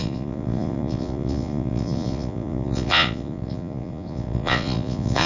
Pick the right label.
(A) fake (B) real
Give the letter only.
A